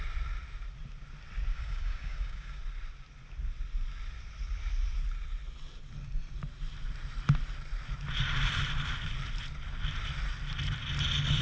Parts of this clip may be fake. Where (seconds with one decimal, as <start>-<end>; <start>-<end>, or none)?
1.5-2.6